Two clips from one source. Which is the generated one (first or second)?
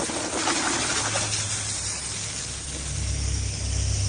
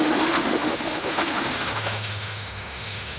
second